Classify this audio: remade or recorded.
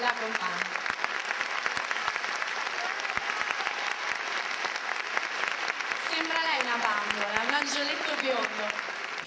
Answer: recorded